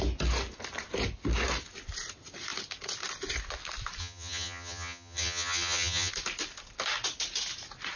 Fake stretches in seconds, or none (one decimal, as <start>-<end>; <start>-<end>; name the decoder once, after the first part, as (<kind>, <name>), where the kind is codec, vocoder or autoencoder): 4.0-6.1 (vocoder, HiFi-GAN)